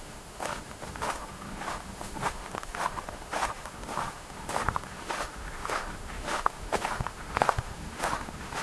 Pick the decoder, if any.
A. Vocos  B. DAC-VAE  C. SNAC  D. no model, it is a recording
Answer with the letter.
B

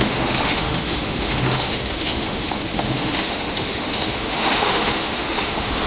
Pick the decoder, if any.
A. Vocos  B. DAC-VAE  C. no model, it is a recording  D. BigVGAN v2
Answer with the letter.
B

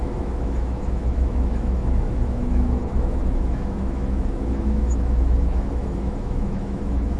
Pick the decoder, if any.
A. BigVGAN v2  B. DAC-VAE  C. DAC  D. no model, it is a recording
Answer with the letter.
B